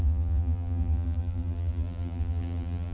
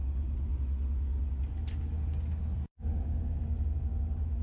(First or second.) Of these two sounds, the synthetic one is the first